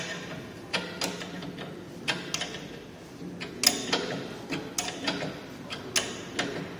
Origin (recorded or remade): recorded